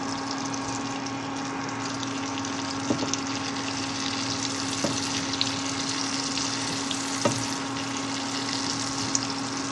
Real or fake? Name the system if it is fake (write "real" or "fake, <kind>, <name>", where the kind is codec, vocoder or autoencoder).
real